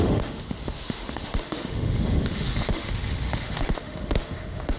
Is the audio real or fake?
fake